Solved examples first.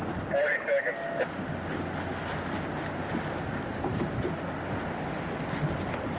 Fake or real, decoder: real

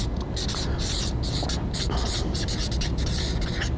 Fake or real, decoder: real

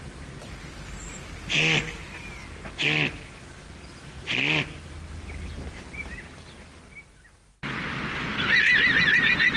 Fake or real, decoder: real